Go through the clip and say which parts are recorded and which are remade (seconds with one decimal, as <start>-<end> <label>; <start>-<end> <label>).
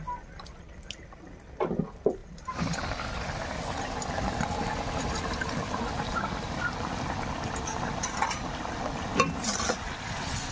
0.0-10.5 recorded